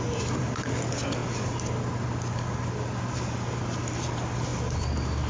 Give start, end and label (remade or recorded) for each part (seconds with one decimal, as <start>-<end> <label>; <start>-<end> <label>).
0.0-5.3 recorded